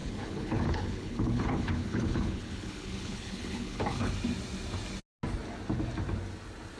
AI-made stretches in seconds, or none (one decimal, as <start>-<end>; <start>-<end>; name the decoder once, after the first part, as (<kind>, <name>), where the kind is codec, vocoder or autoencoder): 0.0-4.1 (codec, HILCodec)

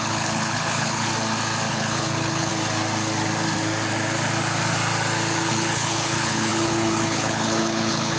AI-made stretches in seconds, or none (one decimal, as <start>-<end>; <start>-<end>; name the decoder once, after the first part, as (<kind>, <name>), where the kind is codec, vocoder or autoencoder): 0.0-1.1 (codec, HILCodec); 1.7-2.5; 5.5-8.2

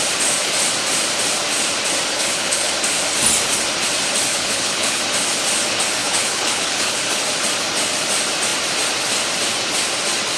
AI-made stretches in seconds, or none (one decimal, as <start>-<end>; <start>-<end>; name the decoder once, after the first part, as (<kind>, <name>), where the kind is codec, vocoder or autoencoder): 2.1-2.7 (codec, HILCodec); 4.3-5.0; 6.0-7.0